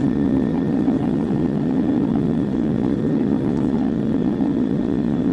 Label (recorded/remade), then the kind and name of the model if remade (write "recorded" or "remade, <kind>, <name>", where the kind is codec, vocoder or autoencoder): remade, vocoder, Vocos